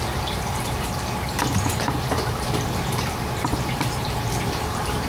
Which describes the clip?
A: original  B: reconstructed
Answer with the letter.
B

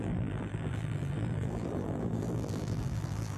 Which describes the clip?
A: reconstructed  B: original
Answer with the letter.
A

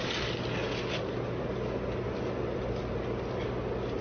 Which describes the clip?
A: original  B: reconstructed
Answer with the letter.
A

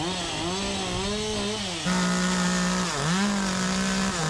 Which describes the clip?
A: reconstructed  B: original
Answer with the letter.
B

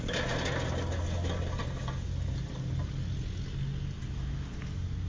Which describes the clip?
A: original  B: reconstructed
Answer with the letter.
A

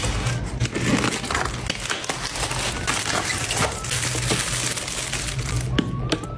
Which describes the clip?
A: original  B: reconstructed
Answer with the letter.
A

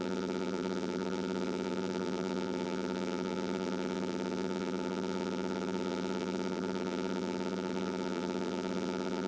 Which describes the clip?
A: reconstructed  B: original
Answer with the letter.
A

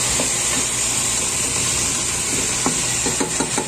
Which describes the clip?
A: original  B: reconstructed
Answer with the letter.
A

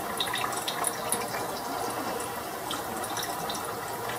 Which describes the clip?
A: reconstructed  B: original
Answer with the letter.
B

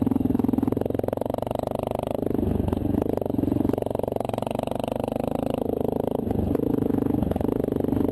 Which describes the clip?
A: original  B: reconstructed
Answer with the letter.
A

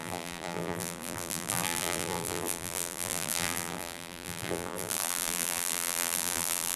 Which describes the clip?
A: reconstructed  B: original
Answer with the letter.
A